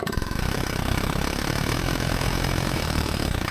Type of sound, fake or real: fake